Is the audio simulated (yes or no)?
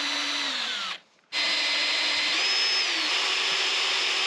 no